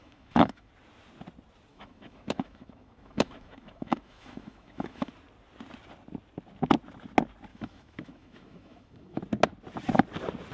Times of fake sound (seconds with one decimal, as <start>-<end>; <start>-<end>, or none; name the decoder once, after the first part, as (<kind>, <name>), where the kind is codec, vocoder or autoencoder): 0.0-0.7 (autoencoder, DAC-VAE); 1.7-5.1; 7.5-9.2